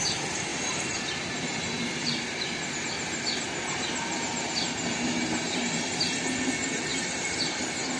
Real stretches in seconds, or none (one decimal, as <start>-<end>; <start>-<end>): 0.0-0.5; 1.0-6.9; 7.4-8.0